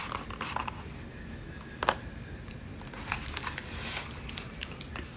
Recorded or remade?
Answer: recorded